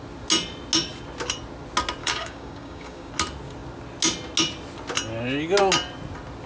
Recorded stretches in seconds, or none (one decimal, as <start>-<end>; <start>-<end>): 0.0-2.0; 3.1-6.5